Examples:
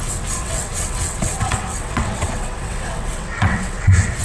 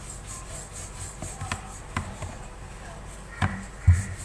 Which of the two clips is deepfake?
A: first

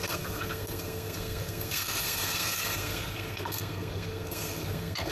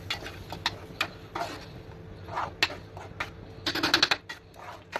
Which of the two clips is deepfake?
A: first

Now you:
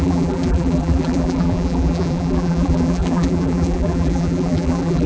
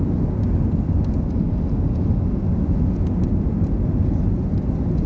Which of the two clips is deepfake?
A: first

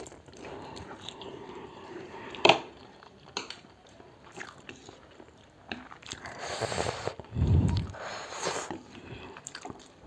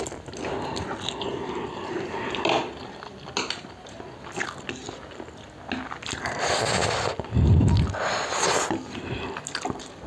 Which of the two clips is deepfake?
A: first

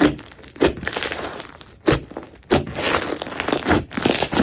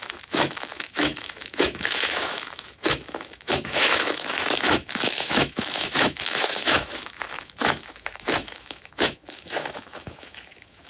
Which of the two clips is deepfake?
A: second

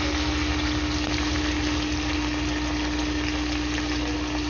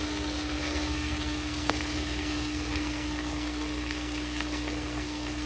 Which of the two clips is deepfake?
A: second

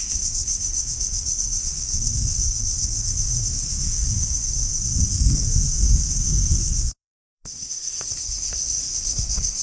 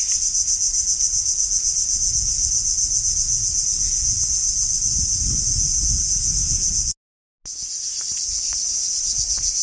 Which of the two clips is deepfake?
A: first